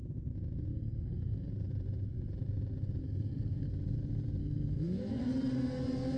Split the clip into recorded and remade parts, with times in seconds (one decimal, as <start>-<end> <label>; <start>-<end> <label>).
0.0-0.7 recorded; 0.7-1.5 remade; 1.5-3.0 recorded; 3.0-3.7 remade; 3.7-4.4 recorded; 4.4-5.3 remade; 5.3-6.2 recorded